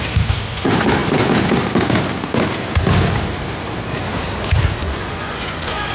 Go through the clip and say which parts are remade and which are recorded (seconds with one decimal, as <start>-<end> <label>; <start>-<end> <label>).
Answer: 0.0-4.8 recorded; 4.8-5.9 remade